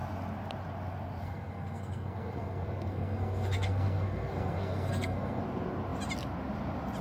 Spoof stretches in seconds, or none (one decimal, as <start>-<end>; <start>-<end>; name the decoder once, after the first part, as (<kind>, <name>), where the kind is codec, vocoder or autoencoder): 1.2-5.4 (codec, SNAC)